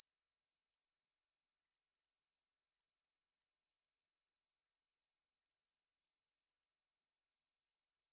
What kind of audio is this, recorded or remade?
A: remade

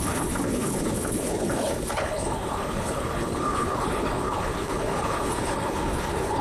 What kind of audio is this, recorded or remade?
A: remade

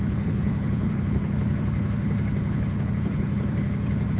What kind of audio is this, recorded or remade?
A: remade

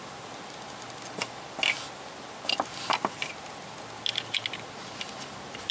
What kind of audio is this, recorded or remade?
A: recorded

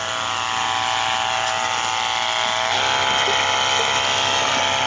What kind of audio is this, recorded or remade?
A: recorded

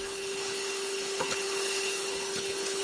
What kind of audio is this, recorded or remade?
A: remade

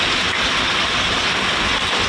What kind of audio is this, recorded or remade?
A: recorded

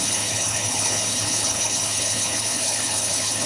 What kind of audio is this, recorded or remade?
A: remade